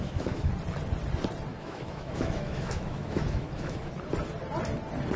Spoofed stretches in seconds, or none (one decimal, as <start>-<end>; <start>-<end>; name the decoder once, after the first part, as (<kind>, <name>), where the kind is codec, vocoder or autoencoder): 0.0-0.5 (autoencoder, DAC-VAE); 1.5-3.9